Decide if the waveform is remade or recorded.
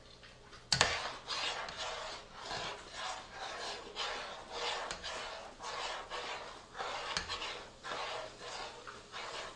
recorded